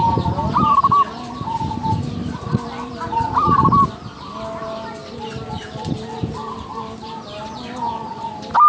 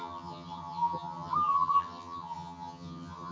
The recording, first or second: first